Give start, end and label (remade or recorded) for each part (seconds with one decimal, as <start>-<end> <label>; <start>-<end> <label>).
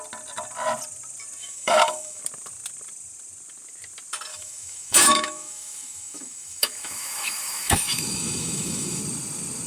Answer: 0.0-1.4 recorded; 1.4-2.2 remade; 2.2-4.3 recorded; 4.3-9.0 remade; 9.0-9.7 recorded